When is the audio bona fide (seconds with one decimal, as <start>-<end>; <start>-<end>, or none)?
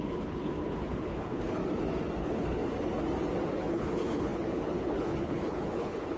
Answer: 1.6-2.2; 2.6-3.5